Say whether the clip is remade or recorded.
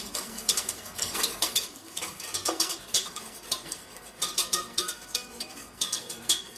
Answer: remade